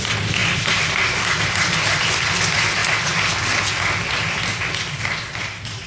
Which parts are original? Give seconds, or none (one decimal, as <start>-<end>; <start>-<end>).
0.0-2.8; 3.6-5.9